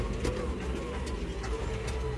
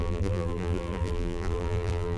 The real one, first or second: first